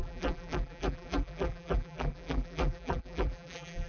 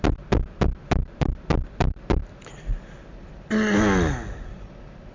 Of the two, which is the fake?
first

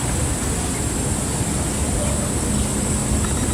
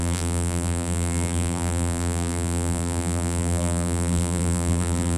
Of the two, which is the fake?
second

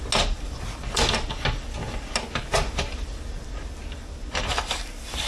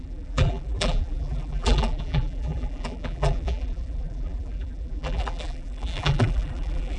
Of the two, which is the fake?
second